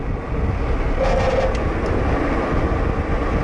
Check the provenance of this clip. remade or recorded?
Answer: recorded